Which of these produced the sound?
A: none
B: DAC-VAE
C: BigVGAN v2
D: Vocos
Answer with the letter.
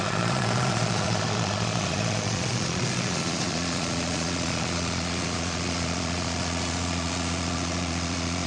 D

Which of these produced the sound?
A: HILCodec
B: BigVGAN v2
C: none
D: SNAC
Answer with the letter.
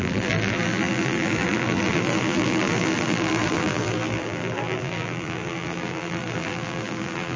B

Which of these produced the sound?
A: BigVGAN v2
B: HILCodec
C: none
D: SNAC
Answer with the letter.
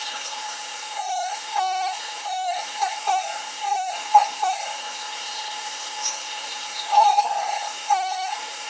D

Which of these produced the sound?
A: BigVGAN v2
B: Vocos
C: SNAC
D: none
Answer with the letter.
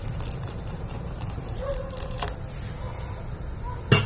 D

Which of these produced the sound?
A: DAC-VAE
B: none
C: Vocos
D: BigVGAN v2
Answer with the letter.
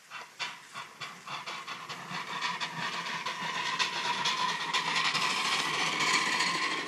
D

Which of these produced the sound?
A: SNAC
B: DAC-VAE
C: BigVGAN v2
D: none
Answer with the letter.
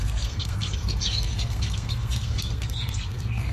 A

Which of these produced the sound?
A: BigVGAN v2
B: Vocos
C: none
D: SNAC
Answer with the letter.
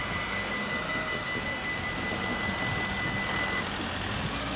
C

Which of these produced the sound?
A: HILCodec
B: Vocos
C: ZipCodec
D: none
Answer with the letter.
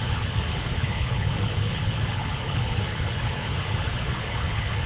A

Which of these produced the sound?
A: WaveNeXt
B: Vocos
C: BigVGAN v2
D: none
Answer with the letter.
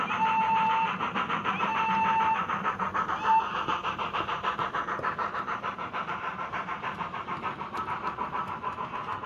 C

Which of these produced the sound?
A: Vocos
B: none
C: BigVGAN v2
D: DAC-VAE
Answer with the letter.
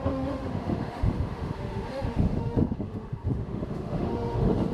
D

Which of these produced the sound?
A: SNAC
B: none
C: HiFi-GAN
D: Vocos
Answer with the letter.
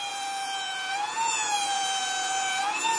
D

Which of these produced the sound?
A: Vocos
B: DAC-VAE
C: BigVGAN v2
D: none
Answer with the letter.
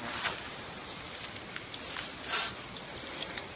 D